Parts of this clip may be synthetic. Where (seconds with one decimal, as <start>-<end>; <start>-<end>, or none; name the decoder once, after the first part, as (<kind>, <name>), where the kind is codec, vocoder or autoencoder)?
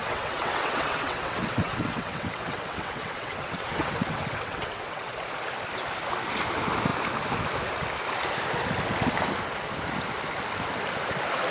0.0-5.1 (vocoder, WaveNeXt)